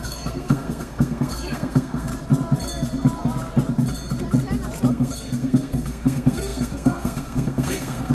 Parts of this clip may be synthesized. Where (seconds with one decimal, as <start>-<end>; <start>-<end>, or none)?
0.0-2.1; 4.9-8.1